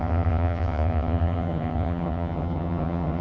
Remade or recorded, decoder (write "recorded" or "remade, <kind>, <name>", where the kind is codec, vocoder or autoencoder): remade, vocoder, HiFi-GAN